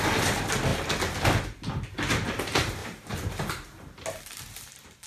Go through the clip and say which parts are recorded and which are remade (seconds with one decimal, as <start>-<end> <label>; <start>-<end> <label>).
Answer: 0.0-2.8 recorded; 2.8-4.0 remade; 4.0-5.1 recorded